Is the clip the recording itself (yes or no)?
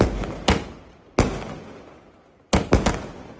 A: yes